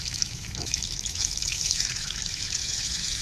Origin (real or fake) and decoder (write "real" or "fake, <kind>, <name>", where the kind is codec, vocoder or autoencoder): fake, autoencoder, DAC-VAE